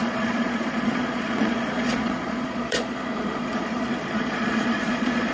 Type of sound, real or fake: fake